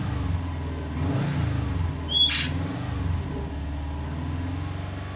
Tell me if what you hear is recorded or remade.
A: recorded